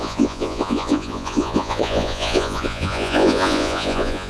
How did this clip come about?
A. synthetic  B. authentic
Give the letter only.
A